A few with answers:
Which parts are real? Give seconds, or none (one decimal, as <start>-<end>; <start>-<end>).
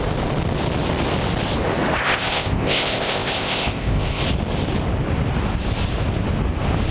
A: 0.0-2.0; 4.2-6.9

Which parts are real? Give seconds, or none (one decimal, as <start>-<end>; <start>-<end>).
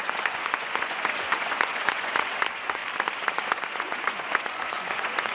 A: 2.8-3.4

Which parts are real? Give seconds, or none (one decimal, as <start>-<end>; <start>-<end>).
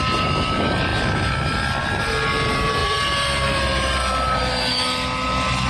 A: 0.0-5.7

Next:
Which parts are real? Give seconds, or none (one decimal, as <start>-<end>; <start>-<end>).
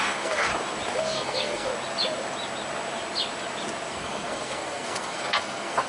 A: 0.5-1.0; 1.7-3.9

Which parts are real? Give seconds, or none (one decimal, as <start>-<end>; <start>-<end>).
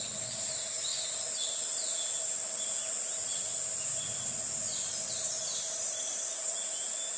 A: 0.0-7.2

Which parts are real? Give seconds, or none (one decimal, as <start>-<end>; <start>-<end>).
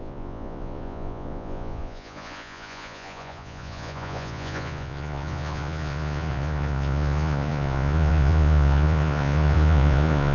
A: none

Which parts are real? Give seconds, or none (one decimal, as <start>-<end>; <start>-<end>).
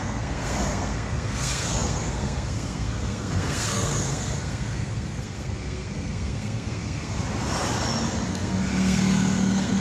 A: 7.2-8.3